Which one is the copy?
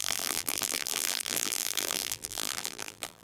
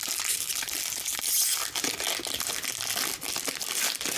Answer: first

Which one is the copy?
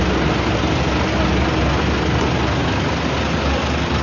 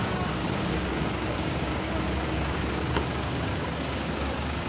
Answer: second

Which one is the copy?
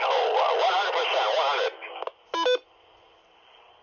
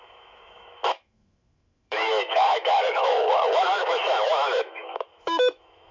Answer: second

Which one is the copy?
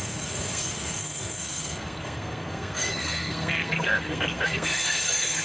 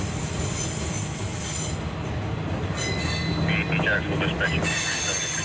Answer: first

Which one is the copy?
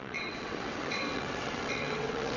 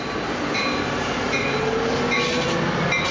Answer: first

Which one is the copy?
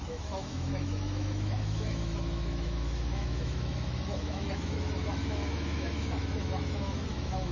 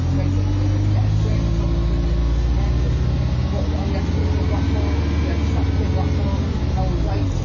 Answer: first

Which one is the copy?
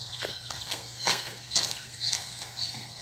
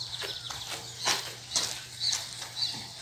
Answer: first